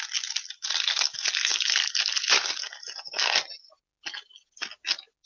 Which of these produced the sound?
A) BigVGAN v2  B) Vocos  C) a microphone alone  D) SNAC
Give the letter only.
C